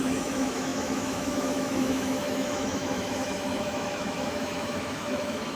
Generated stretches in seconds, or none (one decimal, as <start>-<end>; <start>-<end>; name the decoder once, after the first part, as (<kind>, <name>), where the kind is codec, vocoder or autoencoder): 0.0-5.6 (autoencoder, DAC-VAE)